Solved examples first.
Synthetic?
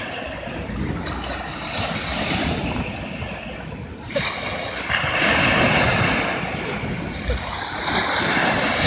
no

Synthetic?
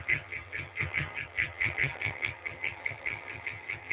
yes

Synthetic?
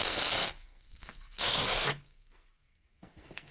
yes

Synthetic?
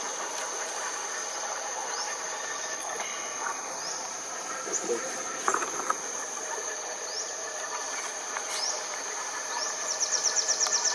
yes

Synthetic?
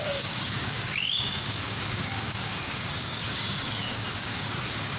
yes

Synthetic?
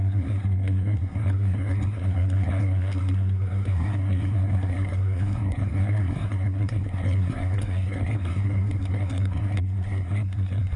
yes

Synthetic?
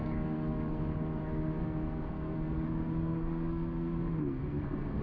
yes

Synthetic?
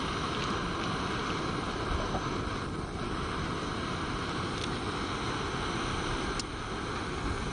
no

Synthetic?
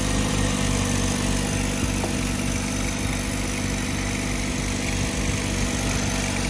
no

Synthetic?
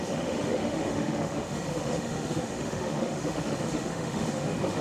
yes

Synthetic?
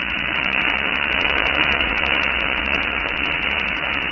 yes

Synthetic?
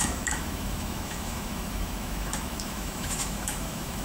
yes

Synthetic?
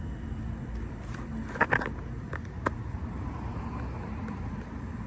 no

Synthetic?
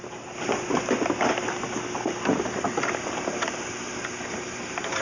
no